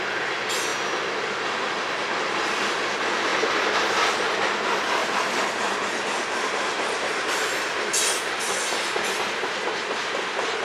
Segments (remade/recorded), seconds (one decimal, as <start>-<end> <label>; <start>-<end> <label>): 0.0-0.7 remade; 0.7-2.7 recorded; 2.7-3.3 remade; 3.3-4.4 recorded; 4.4-10.6 remade

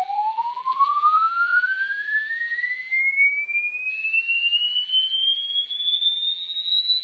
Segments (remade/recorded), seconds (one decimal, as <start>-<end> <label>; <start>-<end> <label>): 0.0-3.0 remade; 3.0-3.9 recorded; 3.9-7.0 remade

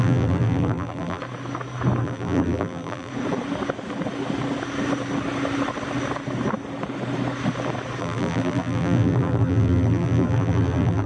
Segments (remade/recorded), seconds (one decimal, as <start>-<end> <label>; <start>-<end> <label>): 0.0-1.2 remade; 1.2-2.0 recorded; 2.0-3.1 remade; 3.1-8.0 recorded; 8.0-11.1 remade

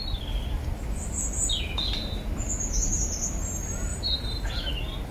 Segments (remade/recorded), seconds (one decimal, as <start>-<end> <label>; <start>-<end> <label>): 0.0-3.9 recorded; 3.9-4.5 remade; 4.5-5.1 recorded

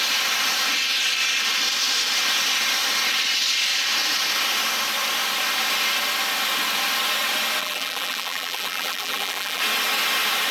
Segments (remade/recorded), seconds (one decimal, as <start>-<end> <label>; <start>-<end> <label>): 0.0-7.6 recorded; 7.6-9.6 remade; 9.6-10.5 recorded

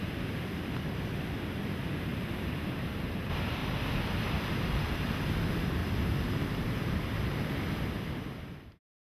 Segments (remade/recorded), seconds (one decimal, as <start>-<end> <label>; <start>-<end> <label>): 0.0-2.1 recorded; 2.1-3.2 remade; 3.2-5.8 recorded; 5.8-7.0 remade; 7.0-9.1 recorded